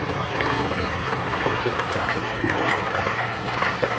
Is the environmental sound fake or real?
fake